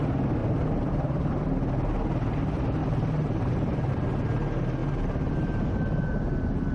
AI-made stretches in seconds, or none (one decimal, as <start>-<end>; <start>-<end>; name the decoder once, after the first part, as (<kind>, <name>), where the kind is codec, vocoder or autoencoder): 0.4-0.9 (vocoder, BigVGAN v2); 2.8-3.9